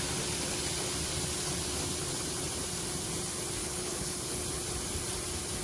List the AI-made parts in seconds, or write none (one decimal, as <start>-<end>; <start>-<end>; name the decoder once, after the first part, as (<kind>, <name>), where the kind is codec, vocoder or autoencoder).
3.6-4.4 (codec, HILCodec)